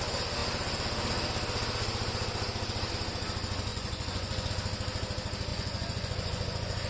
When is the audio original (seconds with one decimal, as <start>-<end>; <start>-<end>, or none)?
0.0-3.7; 4.5-5.5